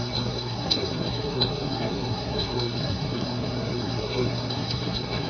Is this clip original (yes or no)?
no